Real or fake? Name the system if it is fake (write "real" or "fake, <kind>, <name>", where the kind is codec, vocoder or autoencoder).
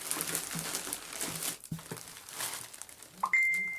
real